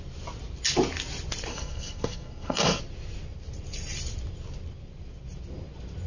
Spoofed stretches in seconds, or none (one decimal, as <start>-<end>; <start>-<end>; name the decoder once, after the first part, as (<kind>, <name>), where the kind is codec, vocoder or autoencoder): 1.5-2.8 (codec, SNAC)